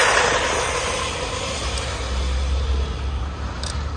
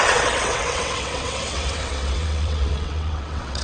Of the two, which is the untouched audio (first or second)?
first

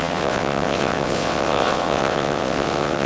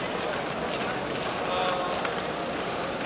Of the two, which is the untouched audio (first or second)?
second